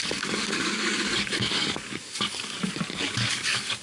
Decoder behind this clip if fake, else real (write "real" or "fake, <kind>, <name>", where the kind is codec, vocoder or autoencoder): fake, codec, DAC